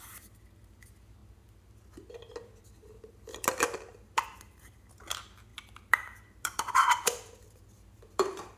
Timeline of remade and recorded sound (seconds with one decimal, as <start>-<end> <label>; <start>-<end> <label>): 0.0-3.9 recorded; 3.9-5.0 remade; 5.0-5.5 recorded; 5.5-8.6 remade